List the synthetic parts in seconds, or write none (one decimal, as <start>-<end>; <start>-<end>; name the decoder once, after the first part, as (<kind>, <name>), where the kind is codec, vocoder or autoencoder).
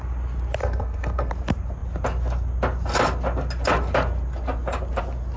0.6-1.3 (codec, SNAC)